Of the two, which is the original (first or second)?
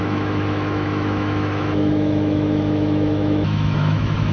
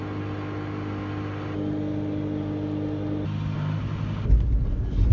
second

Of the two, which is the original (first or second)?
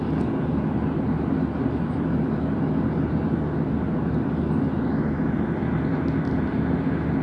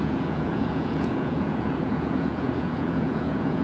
first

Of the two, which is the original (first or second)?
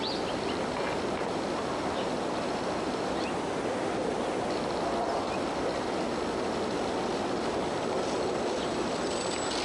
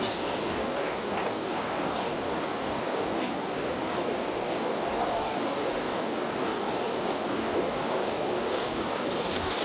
first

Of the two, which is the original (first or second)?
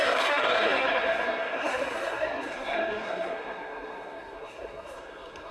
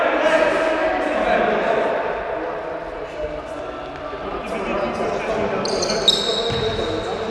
second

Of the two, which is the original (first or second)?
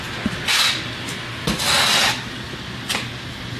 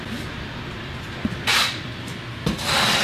first